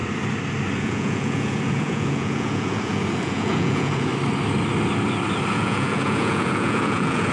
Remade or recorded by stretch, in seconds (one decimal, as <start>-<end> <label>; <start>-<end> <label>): 0.0-0.8 recorded; 0.8-4.1 remade; 4.1-5.5 recorded; 5.5-7.3 remade